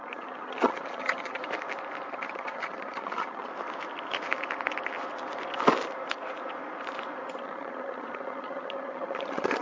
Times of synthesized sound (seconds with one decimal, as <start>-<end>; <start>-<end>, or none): 0.0-1.4; 2.1-3.5; 7.3-9.6